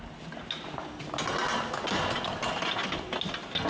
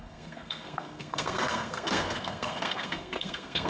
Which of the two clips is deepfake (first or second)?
second